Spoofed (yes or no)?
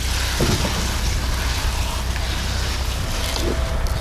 no